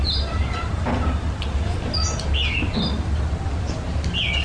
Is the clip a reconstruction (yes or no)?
no